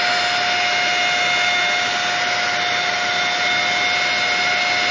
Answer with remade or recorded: recorded